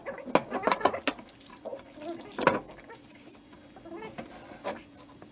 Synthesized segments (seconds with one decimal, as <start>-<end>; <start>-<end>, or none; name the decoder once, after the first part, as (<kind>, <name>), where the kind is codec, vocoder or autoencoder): none